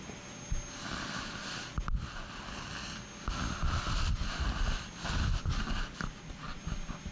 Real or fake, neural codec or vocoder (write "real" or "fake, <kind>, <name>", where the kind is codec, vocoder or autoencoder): real